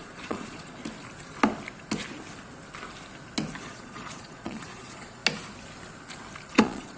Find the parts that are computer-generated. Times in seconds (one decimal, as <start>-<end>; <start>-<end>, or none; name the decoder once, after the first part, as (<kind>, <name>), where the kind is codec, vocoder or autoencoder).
0.0-0.8 (vocoder, Vocos); 3.6-5.2; 6.5-7.0